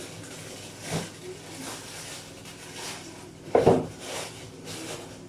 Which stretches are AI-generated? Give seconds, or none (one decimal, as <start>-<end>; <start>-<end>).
none